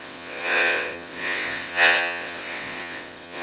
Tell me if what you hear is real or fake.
fake